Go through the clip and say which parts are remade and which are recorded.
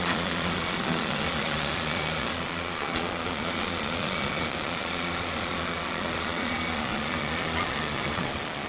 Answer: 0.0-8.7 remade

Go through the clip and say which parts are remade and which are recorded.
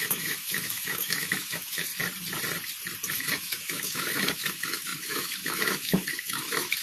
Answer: 0.0-1.9 remade; 1.9-3.1 recorded; 3.1-6.8 remade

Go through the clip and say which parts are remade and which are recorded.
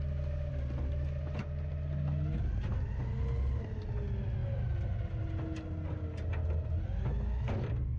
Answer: 0.0-8.0 recorded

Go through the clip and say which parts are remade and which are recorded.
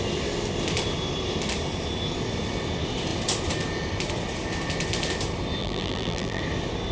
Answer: 0.0-5.6 recorded; 5.6-6.4 remade; 6.4-6.9 recorded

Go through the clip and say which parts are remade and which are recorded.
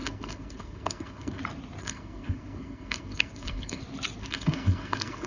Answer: 0.0-1.4 remade; 1.4-1.8 recorded; 1.8-3.8 remade; 3.8-4.2 recorded; 4.2-5.3 remade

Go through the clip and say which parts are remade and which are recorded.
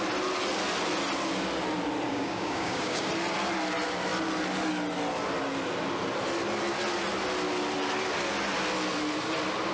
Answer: 0.0-2.1 recorded; 2.1-3.1 remade; 3.1-9.7 recorded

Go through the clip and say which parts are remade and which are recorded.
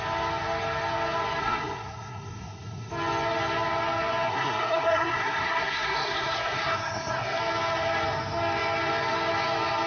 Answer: 0.0-1.4 recorded; 1.4-2.9 remade; 2.9-4.3 recorded; 4.3-7.4 remade; 7.4-9.9 recorded